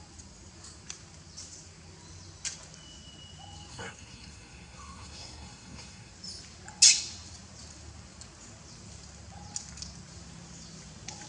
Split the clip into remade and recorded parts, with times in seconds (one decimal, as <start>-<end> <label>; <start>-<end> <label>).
0.0-3.7 recorded; 3.7-6.1 remade; 6.1-11.3 recorded